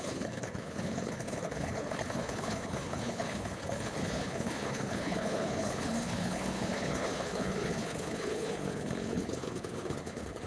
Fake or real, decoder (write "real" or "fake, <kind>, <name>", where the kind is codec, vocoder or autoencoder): fake, codec, HILCodec